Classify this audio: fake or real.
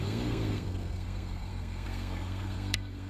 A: fake